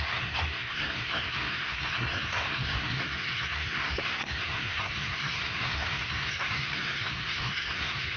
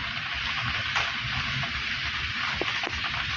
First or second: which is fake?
first